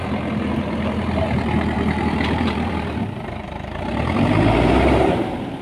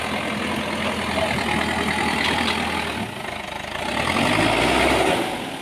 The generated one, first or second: first